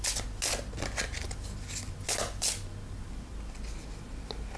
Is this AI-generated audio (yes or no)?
no